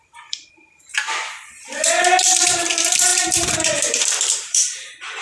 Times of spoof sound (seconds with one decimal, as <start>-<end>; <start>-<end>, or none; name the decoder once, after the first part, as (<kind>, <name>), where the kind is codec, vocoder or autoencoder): 0.0-0.9 (vocoder, BigVGAN v2); 1.9-5.2